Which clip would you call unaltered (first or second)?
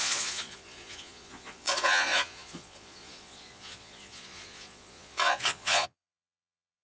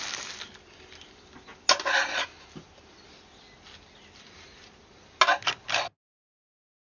second